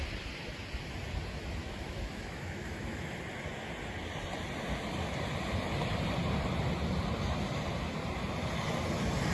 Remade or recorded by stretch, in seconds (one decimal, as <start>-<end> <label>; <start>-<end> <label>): 0.0-1.6 recorded; 1.6-3.2 remade; 3.2-9.3 recorded